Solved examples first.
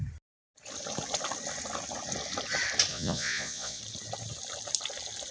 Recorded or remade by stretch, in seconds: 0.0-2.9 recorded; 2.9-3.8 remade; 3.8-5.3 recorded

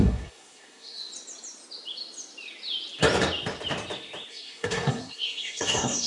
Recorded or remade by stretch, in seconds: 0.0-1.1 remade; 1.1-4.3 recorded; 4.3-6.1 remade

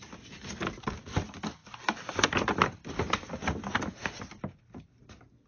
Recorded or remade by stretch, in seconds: 0.0-5.5 recorded

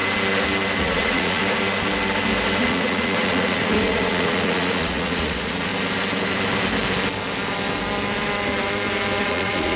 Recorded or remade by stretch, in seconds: 0.0-0.8 recorded; 0.8-1.4 remade; 1.4-2.6 recorded; 2.6-5.7 remade; 5.7-9.2 recorded; 9.2-9.8 remade

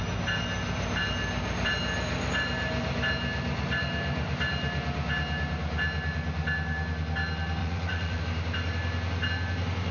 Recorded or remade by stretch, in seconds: 0.0-7.6 recorded; 7.6-8.2 remade; 8.2-9.9 recorded